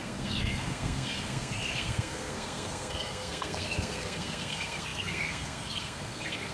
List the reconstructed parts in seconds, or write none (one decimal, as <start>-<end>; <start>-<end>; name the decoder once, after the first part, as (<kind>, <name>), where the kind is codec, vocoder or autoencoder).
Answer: 0.0-6.5 (codec, SNAC)